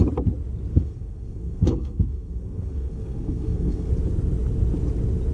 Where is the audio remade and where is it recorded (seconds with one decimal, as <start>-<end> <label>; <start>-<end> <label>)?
0.0-0.7 recorded; 0.7-3.9 remade; 3.9-5.3 recorded